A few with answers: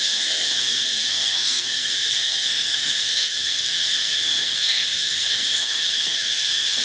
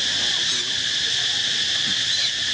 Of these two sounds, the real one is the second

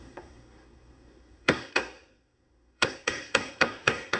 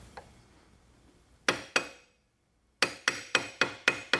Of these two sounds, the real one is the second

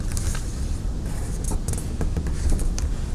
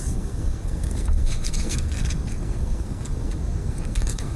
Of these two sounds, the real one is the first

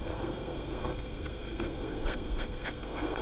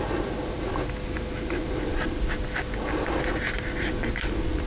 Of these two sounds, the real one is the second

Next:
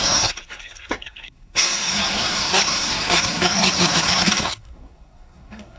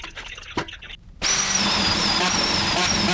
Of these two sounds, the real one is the second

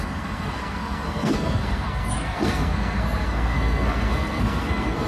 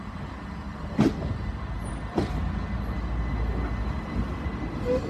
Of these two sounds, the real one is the second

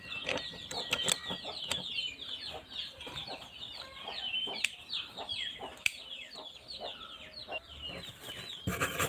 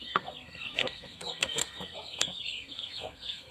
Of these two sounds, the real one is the first